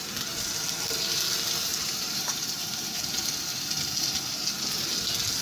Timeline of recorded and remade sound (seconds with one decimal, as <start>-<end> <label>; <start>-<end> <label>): 0.0-1.7 recorded; 1.7-3.1 remade; 3.1-5.4 recorded